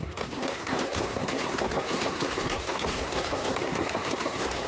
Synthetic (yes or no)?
yes